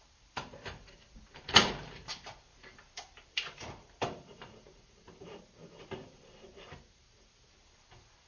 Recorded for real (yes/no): no